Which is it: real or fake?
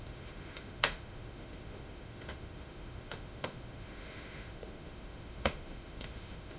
fake